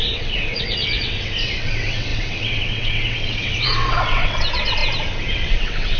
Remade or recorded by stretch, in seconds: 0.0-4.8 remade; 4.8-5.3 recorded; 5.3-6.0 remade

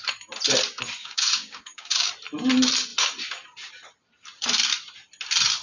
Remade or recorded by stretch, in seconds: 0.0-1.0 recorded; 1.0-2.1 remade; 2.1-5.6 recorded

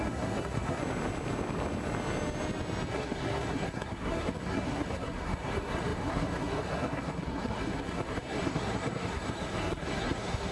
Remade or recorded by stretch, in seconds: 0.0-0.8 remade; 0.8-2.9 recorded; 2.9-10.5 remade

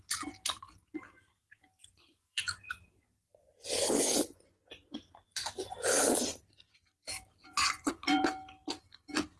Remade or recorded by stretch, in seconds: 0.0-1.8 recorded; 1.8-2.4 remade; 2.4-3.3 recorded; 3.3-5.5 remade; 5.5-7.3 recorded; 7.3-8.2 remade; 8.2-9.4 recorded

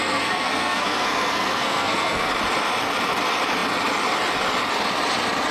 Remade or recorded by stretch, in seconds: 0.0-2.3 remade; 2.3-5.5 recorded

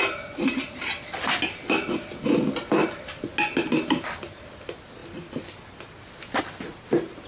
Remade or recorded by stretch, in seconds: 0.0-7.3 recorded

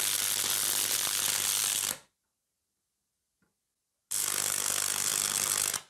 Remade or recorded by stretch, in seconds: 0.0-5.9 recorded